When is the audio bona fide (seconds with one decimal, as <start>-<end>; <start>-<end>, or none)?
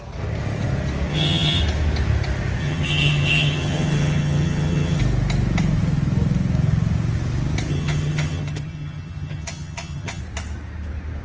0.0-1.1; 1.6-2.6; 5.0-7.7; 10.2-11.2